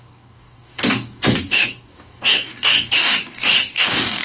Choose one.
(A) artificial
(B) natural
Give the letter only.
A